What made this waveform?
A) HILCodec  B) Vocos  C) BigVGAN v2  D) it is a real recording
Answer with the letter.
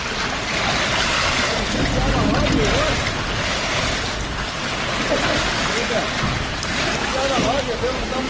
D